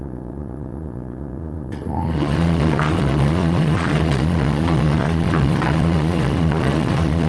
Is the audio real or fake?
fake